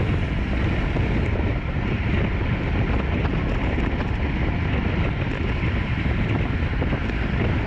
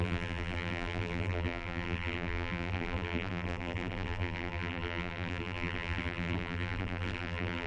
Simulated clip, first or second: second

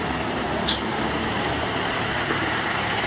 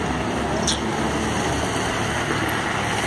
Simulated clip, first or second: first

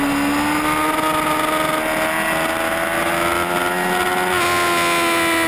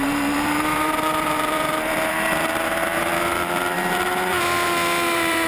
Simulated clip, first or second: second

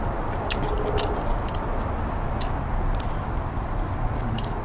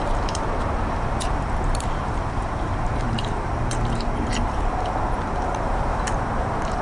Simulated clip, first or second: second